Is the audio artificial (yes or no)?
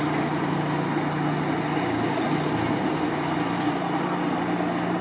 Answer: no